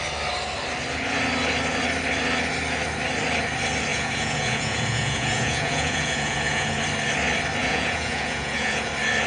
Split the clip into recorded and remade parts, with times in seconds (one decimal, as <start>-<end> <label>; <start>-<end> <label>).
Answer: 0.0-3.9 recorded; 3.9-6.8 remade; 6.8-7.6 recorded; 7.6-8.9 remade; 8.9-9.3 recorded